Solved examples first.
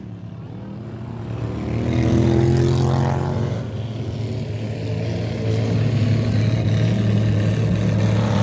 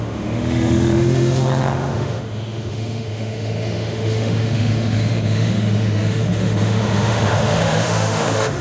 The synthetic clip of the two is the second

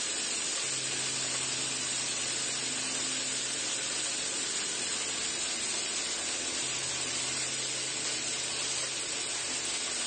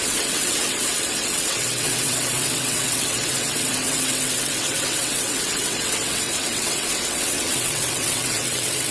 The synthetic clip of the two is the second